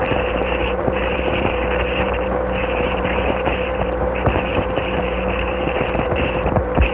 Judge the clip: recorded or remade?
remade